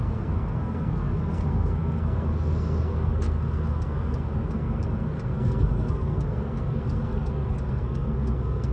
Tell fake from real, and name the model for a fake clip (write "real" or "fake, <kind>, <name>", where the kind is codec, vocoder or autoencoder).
fake, codec, SNAC